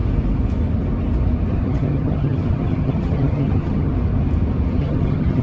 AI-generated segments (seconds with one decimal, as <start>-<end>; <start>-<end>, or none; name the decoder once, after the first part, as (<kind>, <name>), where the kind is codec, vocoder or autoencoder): 1.5-3.9 (vocoder, HiFi-GAN); 4.8-5.4